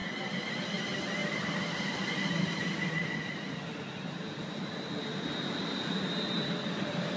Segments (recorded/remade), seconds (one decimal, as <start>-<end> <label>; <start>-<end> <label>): 0.0-7.2 recorded